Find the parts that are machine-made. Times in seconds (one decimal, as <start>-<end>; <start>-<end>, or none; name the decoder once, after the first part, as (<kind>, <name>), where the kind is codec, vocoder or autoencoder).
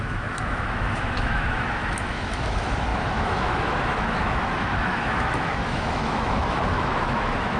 0.0-7.6 (autoencoder, DAC-VAE)